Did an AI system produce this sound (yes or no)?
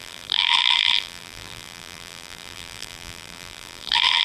yes